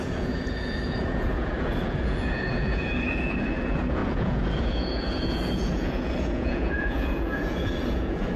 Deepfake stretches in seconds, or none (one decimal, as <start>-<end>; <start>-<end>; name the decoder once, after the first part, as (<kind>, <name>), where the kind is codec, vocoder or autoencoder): 0.0-8.4 (vocoder, Vocos)